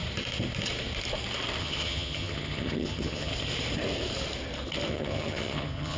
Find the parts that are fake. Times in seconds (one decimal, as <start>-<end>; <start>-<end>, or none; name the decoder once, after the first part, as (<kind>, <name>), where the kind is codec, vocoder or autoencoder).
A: 1.6-3.3 (vocoder, HiFi-GAN); 4.9-6.0